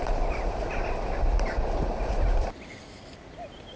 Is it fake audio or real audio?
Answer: real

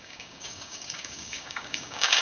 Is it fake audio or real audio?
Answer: fake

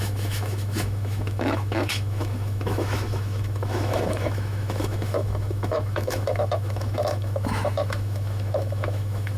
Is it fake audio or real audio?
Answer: fake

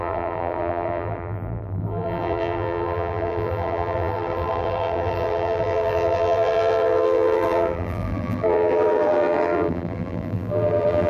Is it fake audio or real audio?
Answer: fake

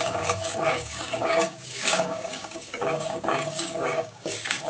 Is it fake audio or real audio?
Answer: fake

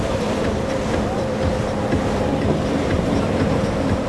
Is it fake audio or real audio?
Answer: fake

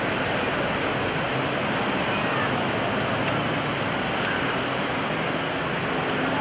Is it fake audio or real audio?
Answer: real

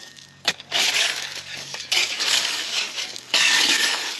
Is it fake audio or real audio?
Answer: fake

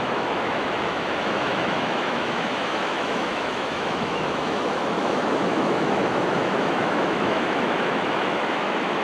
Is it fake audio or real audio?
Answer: fake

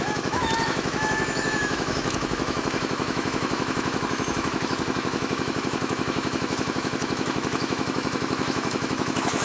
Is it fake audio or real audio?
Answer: fake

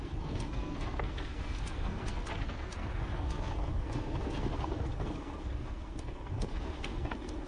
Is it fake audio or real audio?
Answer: fake